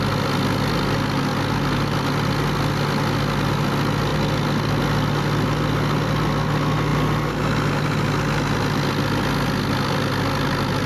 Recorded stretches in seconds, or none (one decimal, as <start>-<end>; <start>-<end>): 0.0-10.9